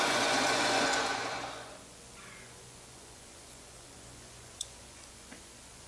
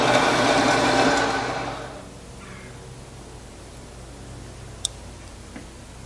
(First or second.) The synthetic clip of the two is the first